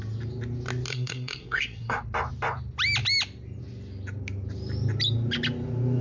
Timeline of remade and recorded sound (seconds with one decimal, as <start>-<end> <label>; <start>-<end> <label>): 0.0-0.9 recorded; 0.9-2.0 remade; 2.0-6.0 recorded